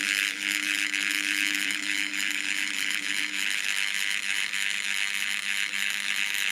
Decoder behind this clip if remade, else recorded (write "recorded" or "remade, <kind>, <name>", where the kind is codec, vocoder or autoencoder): remade, autoencoder, DAC-VAE